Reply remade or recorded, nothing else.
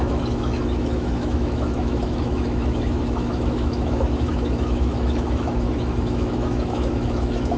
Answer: remade